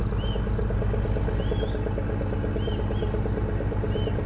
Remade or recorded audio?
recorded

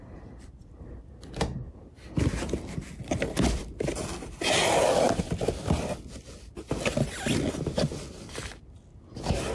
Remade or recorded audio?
recorded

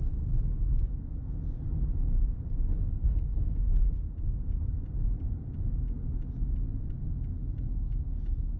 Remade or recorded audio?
recorded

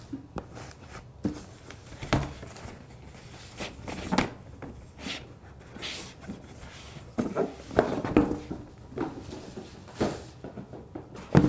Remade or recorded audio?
recorded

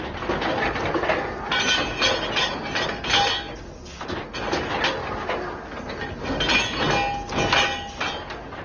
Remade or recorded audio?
recorded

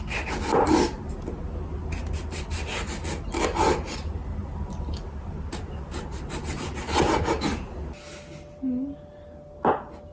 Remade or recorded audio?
recorded